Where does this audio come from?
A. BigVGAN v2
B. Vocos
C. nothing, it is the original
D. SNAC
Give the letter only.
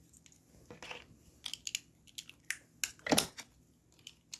C